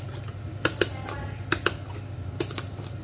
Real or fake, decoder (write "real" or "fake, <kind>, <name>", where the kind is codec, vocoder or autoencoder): real